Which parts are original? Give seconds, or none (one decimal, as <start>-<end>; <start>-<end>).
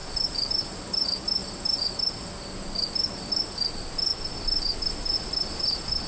0.0-6.1